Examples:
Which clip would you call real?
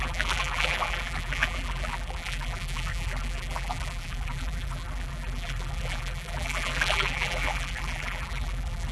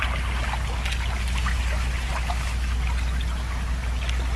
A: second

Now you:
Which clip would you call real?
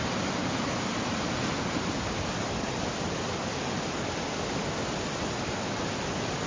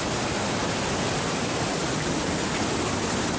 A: second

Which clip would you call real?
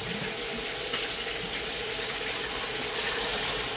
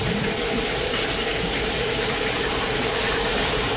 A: first